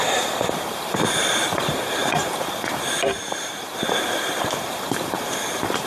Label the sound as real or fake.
fake